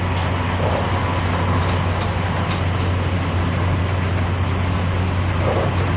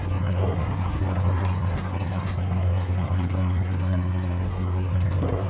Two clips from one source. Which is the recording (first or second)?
first